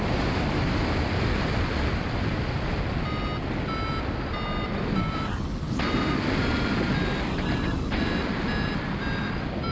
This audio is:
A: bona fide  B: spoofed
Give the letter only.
A